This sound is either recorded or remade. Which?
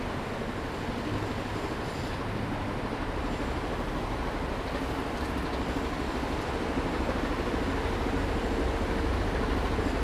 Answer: recorded